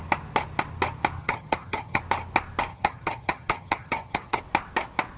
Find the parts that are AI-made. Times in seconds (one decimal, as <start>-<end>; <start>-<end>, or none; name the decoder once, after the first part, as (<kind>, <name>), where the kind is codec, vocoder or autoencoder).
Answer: 1.2-2.0 (vocoder, HiFi-GAN); 2.7-4.4